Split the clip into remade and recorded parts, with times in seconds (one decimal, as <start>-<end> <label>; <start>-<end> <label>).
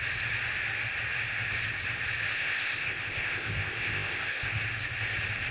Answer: 0.0-2.3 recorded; 2.3-4.6 remade; 4.6-5.5 recorded